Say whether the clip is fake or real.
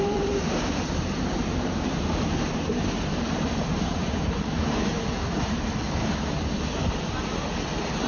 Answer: fake